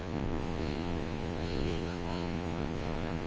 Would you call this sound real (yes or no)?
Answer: no